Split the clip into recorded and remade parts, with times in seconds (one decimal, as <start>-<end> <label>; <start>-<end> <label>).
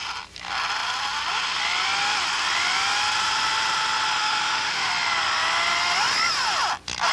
0.0-4.2 recorded; 4.2-4.9 remade; 4.9-7.1 recorded